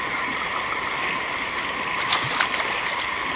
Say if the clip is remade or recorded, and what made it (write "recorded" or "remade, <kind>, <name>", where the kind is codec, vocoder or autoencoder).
recorded